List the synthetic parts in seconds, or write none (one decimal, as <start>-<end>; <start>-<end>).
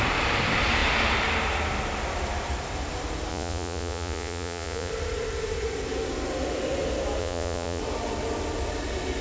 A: 3.3-4.9; 7.2-7.8